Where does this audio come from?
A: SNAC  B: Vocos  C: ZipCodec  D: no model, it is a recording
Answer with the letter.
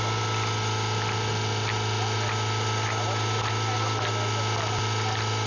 D